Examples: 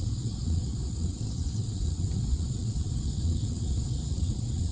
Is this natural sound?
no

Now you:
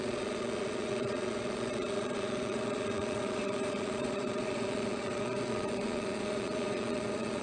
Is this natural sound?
no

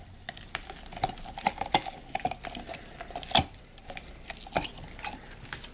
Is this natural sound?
yes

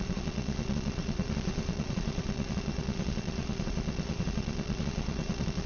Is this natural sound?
no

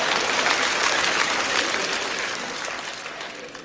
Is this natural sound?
yes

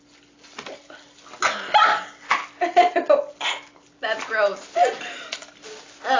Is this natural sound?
yes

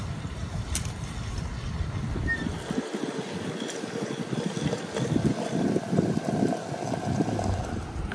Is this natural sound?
yes